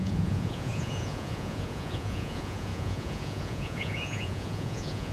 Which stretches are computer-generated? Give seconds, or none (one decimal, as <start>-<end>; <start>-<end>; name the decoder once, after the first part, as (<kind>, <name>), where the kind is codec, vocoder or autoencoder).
0.0-5.1 (vocoder, Vocos)